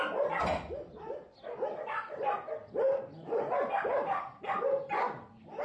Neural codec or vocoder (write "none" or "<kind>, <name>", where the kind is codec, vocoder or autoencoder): none